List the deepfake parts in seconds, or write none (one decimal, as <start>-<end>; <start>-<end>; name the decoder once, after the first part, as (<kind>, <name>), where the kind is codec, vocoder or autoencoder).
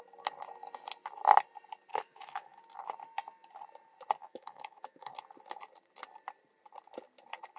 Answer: 1.9-2.6 (autoencoder, DAC-VAE); 4.2-5.1